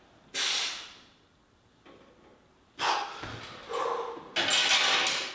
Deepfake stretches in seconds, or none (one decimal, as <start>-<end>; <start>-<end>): none

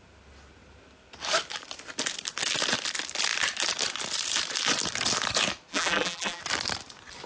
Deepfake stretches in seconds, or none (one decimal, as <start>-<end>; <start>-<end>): 5.7-6.4

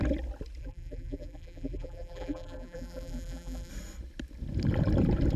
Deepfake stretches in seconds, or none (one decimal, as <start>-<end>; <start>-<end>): 0.6-3.7

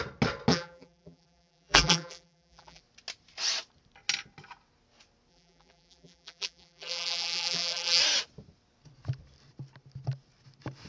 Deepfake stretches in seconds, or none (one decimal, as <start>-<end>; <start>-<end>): 0.5-2.8; 5.3-8.0

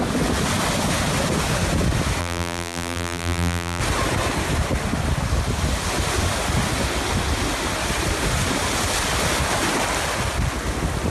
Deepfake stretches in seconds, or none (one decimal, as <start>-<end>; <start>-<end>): 2.2-3.8

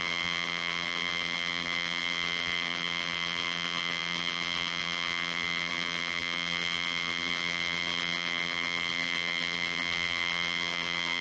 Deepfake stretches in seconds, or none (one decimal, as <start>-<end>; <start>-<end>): 0.0-11.2